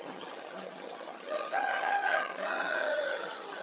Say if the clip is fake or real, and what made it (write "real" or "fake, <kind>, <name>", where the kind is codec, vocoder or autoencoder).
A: fake, vocoder, HiFi-GAN